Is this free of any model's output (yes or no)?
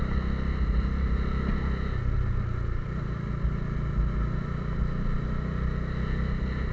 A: yes